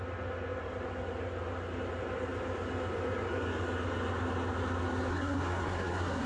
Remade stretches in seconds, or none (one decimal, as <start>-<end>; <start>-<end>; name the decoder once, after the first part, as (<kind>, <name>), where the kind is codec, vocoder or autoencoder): 5.1-6.3 (codec, SNAC)